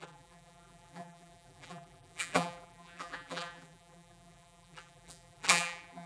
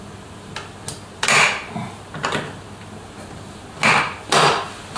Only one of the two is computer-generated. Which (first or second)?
first